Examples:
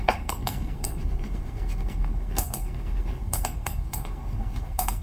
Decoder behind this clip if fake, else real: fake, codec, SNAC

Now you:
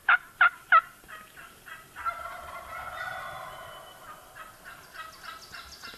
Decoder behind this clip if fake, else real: real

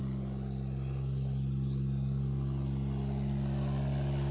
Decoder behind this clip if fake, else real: real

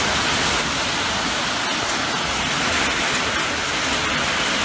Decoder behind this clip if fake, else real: real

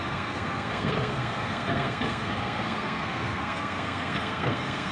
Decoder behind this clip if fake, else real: fake, codec, SNAC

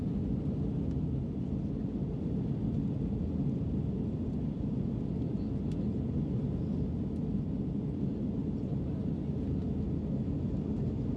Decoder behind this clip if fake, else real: real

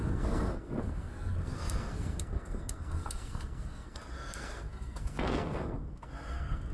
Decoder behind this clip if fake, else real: fake, codec, SNAC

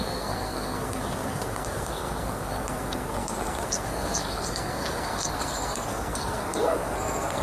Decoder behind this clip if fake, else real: fake, codec, SNAC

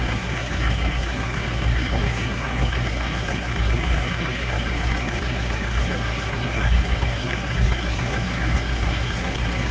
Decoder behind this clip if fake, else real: fake, codec, SNAC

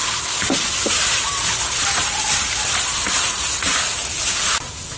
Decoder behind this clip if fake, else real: real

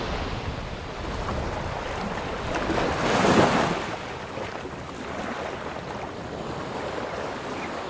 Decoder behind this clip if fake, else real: real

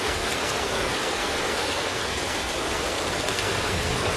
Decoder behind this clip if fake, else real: fake, codec, SNAC